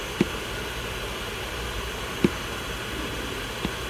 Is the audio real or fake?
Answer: real